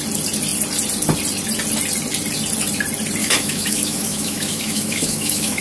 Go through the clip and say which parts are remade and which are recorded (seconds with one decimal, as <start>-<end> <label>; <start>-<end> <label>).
0.0-3.2 recorded; 3.2-5.6 remade